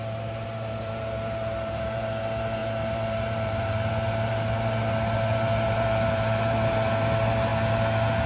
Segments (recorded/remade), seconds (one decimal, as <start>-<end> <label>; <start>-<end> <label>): 0.0-7.5 remade; 7.5-8.3 recorded